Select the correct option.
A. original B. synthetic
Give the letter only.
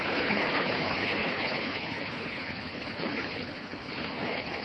B